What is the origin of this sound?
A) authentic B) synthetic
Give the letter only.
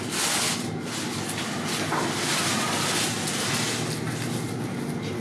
A